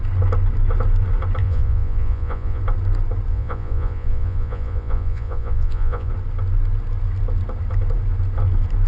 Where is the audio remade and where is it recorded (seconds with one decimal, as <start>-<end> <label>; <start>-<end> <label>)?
0.0-1.4 recorded; 1.4-2.6 remade; 2.6-3.3 recorded; 3.3-6.1 remade; 6.1-8.9 recorded

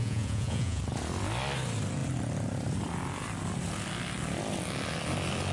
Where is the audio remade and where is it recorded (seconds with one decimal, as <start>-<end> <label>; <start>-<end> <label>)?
0.0-0.8 remade; 0.8-5.5 recorded

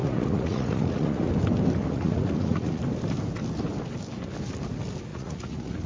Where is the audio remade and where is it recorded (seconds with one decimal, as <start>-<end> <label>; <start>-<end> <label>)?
0.0-1.3 remade; 1.3-1.8 recorded; 1.8-2.8 remade; 2.8-5.1 recorded; 5.1-5.9 remade